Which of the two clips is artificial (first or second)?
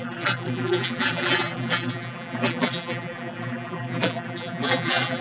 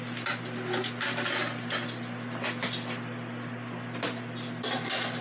first